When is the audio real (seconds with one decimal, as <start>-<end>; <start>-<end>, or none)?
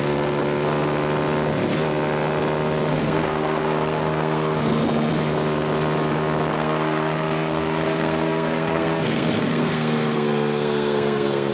0.0-2.9; 4.8-6.5